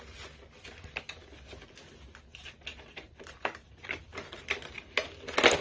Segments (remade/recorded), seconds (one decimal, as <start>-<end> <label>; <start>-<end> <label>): 0.0-2.7 recorded; 2.7-4.4 remade; 4.4-5.6 recorded